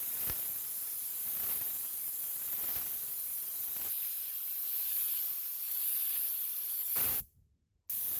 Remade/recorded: recorded